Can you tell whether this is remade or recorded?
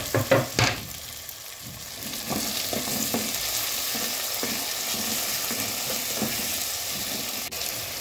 recorded